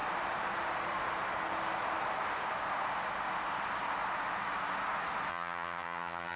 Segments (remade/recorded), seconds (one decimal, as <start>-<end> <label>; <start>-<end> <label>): 0.0-5.3 recorded; 5.3-6.4 remade